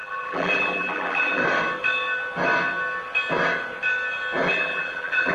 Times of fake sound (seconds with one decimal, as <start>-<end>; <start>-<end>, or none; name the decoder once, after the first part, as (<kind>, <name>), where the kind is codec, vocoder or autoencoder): 0.0-1.4 (vocoder, BigVGAN v2); 4.5-5.3